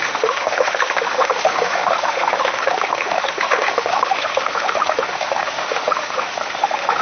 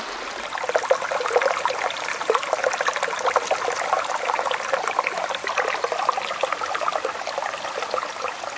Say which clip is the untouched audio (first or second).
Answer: second